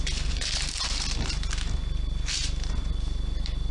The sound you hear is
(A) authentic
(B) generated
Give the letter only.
A